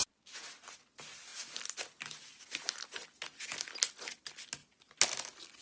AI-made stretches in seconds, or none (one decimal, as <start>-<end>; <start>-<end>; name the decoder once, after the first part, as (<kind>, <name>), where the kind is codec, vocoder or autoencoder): none